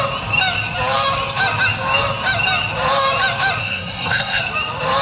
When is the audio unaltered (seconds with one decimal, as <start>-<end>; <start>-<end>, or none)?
0.0-3.6; 4.4-5.0